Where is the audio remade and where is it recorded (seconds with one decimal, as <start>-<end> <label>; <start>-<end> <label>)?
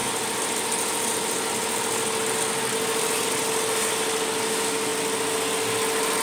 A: 0.0-6.2 recorded